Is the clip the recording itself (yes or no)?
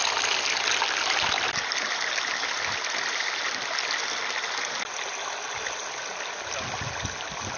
yes